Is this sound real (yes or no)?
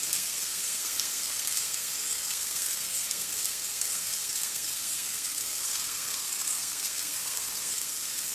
no